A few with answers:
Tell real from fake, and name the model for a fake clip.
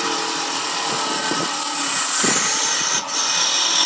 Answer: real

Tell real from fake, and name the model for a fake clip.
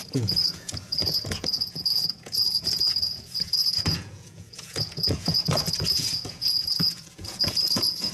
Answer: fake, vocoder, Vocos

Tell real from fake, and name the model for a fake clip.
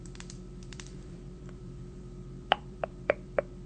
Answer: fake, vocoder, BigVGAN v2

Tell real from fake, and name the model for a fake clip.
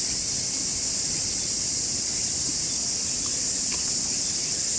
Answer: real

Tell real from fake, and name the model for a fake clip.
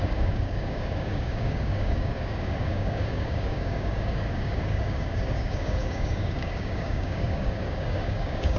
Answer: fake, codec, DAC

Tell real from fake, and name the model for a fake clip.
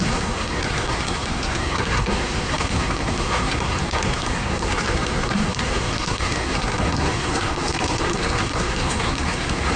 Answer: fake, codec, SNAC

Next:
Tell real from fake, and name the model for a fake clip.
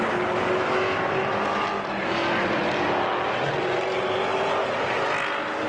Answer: real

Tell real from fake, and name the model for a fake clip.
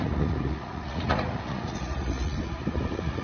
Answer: fake, vocoder, Vocos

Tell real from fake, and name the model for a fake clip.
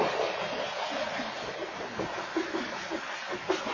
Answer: real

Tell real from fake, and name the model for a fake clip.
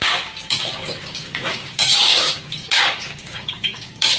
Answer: fake, codec, DAC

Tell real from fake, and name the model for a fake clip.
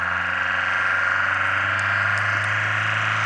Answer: real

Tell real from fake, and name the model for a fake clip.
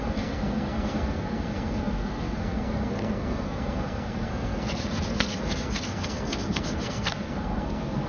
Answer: fake, codec, SNAC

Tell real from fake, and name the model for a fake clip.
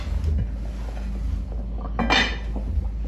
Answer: real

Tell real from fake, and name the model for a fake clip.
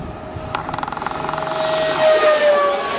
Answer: real